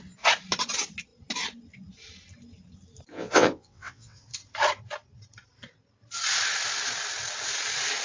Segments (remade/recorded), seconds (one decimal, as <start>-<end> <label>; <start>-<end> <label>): 0.0-3.1 recorded; 3.1-4.2 remade; 4.2-8.0 recorded